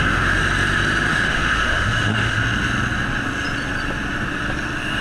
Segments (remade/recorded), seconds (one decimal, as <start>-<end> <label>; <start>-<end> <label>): 0.0-0.4 remade; 0.4-1.1 recorded; 1.1-2.4 remade; 2.4-5.0 recorded